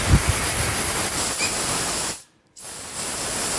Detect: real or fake real